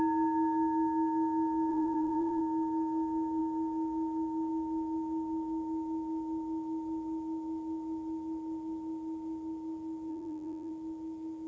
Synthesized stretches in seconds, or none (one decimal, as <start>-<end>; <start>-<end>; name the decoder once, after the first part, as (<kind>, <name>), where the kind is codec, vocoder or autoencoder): 1.7-2.4 (vocoder, BigVGAN v2); 10.1-10.7